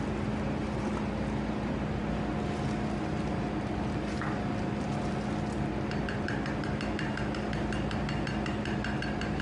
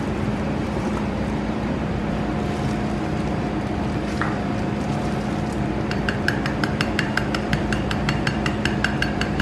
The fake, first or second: second